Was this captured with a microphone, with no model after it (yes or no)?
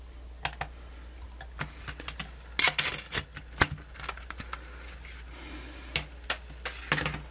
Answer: yes